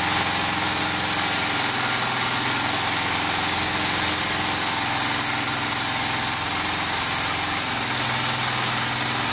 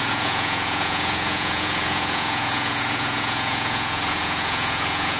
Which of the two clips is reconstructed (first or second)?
second